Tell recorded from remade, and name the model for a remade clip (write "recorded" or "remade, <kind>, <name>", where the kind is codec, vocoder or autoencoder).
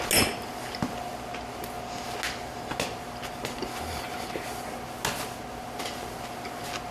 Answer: recorded